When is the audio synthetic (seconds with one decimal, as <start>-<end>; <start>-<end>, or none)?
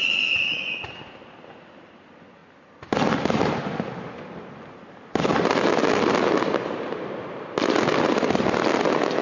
0.0-0.9